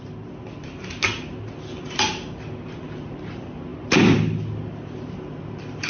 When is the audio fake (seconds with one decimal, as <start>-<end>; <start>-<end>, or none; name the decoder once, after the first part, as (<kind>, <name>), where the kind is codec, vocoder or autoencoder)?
none